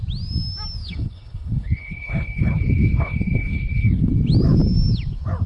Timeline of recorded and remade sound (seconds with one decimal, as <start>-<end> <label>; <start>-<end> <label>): 0.0-0.8 recorded; 0.8-4.1 remade; 4.1-5.5 recorded